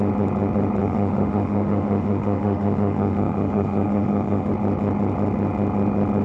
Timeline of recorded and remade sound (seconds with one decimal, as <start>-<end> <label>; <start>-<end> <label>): 0.0-0.8 recorded; 0.8-4.5 remade; 4.5-6.2 recorded